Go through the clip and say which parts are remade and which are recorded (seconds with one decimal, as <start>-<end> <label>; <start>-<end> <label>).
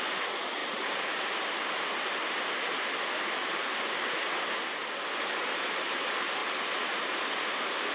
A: 0.0-7.9 recorded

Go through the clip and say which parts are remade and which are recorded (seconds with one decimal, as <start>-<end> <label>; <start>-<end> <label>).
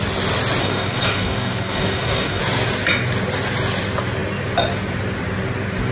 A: 0.0-0.6 recorded; 0.6-2.4 remade; 2.4-5.9 recorded